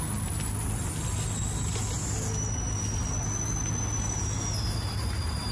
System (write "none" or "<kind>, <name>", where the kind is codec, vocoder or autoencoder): none